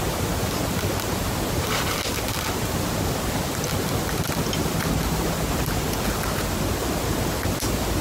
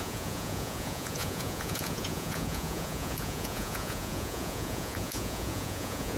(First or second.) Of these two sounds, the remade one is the second